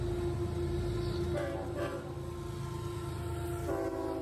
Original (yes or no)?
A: yes